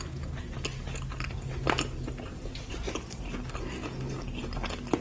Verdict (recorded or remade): recorded